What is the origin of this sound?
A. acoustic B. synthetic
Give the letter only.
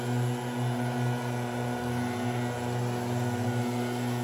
A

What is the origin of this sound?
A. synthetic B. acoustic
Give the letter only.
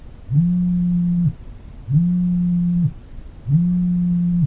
B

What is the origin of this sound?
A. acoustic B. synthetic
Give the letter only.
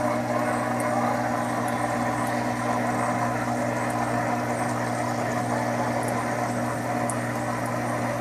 A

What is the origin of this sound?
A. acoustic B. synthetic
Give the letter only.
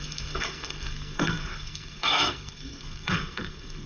B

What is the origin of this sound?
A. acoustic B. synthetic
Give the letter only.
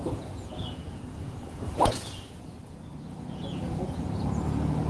B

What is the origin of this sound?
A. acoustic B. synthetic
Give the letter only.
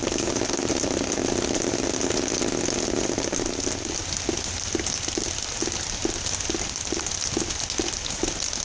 A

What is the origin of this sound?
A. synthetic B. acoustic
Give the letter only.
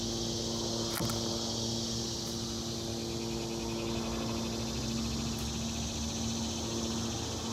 B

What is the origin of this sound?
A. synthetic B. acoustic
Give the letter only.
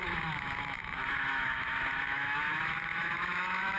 A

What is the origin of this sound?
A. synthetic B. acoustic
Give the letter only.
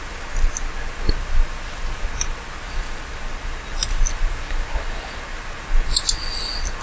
B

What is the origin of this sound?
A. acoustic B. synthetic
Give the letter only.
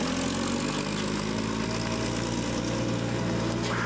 A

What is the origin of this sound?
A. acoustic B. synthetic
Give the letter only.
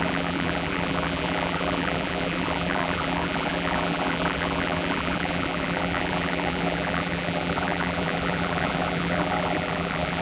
B